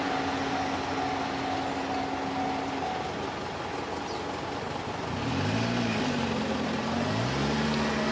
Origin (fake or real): real